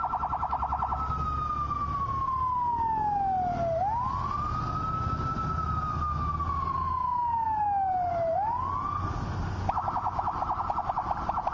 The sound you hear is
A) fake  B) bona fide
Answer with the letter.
B